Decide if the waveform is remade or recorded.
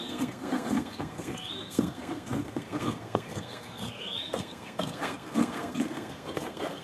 remade